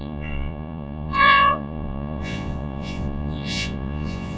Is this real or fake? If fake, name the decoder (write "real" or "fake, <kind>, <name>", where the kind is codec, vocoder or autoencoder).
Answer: fake, vocoder, Vocos